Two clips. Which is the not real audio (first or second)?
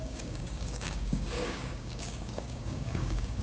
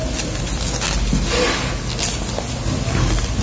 first